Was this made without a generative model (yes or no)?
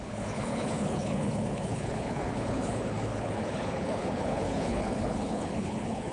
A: no